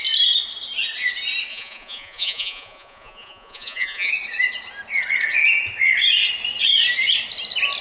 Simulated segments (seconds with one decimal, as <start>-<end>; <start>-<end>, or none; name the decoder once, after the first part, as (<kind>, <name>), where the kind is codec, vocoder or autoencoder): 1.5-4.1 (vocoder, Vocos)